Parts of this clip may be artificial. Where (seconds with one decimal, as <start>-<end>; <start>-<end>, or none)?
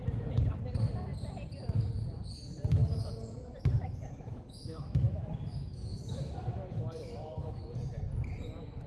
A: 2.8-8.0